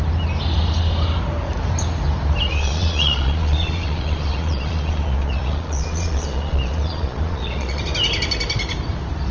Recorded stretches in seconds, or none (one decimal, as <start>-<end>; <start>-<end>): 0.0-2.5; 7.8-9.3